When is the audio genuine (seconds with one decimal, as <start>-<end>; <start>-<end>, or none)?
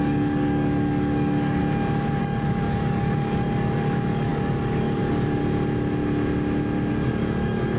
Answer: 1.6-2.2; 5.4-6.9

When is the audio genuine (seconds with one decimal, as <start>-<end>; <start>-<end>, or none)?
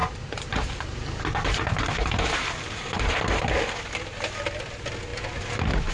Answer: 3.5-5.9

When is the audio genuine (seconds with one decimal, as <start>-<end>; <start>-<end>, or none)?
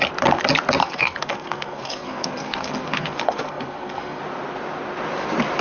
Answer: 0.0-0.8; 4.2-5.6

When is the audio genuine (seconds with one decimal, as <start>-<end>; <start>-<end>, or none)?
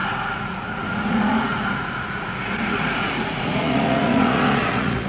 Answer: none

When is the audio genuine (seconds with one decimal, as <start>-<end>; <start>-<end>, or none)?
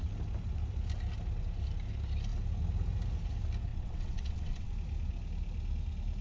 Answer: 0.0-3.7; 4.7-6.2